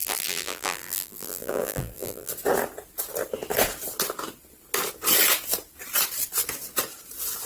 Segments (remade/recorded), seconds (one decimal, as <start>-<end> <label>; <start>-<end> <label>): 0.0-2.3 remade; 2.3-7.5 recorded